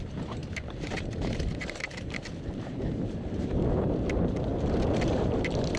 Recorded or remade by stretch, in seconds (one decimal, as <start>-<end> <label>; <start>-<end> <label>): 0.0-4.5 remade; 4.5-5.0 recorded; 5.0-5.8 remade